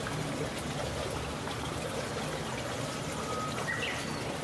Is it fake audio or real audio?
real